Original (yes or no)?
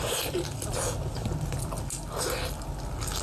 yes